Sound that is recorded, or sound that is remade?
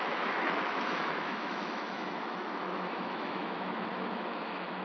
remade